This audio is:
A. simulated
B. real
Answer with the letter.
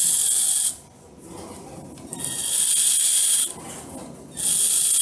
B